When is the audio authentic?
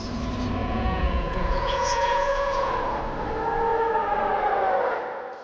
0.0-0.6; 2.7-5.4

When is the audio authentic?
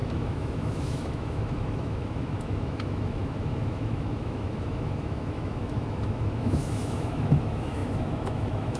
none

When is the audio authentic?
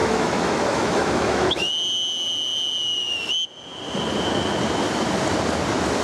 1.7-6.0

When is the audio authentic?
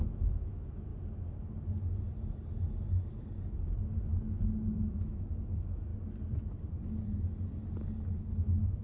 0.9-4.7; 5.9-8.3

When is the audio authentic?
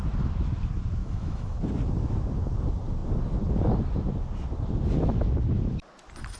0.0-1.0; 1.6-6.4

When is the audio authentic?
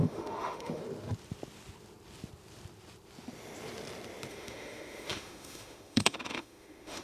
0.8-4.3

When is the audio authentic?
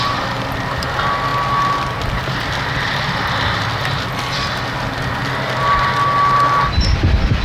0.0-7.4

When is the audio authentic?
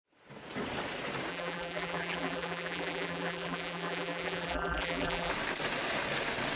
0.0-1.3; 5.3-6.6